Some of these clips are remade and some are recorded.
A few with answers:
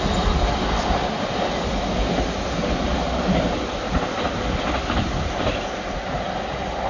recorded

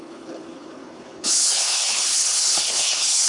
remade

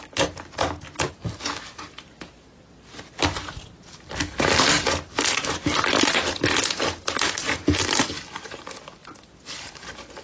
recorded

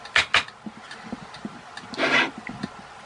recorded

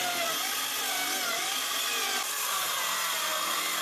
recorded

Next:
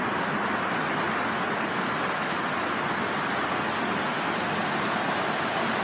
recorded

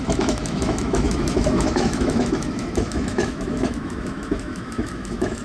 remade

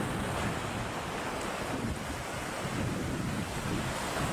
recorded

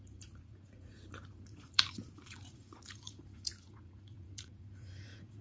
remade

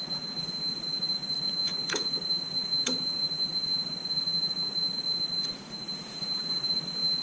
remade